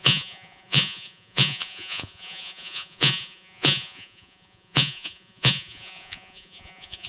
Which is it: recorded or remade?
remade